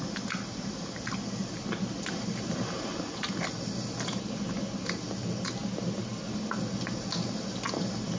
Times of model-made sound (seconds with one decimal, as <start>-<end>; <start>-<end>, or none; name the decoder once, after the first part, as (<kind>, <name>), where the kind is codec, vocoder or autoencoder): none

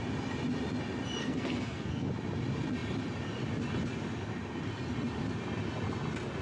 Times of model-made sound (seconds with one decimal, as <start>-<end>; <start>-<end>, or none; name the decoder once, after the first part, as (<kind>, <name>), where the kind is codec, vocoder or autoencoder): 1.2-2.1 (codec, SNAC)

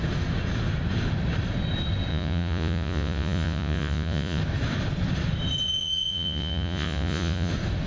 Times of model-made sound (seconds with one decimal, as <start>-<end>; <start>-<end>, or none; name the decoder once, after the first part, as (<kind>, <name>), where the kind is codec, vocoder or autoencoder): 2.1-4.4 (vocoder, Vocos); 5.8-7.5

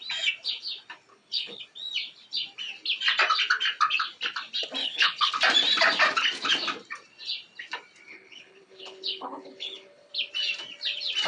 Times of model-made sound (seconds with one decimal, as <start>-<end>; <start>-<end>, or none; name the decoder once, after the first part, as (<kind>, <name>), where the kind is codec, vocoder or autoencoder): 1.1-1.6 (codec, HILCodec); 4.8-5.3; 8.1-10.1

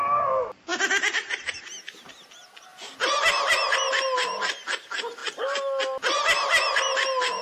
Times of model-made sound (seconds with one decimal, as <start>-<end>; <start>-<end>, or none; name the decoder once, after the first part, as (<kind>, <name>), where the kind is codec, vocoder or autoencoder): none

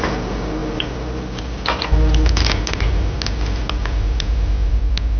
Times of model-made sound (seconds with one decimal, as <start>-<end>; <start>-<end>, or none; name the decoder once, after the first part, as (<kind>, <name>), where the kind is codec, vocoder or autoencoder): none

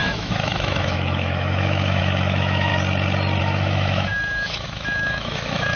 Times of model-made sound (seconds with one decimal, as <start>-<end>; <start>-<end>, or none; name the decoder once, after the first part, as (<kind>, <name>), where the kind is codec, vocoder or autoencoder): 0.0-2.7 (autoencoder, DAC-VAE); 3.4-5.8